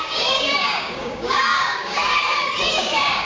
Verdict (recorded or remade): remade